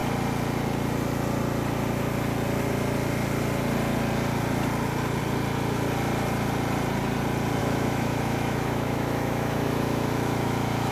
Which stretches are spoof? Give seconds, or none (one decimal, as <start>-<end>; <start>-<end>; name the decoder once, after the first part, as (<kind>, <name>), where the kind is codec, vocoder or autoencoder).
7.6-10.9 (autoencoder, DAC-VAE)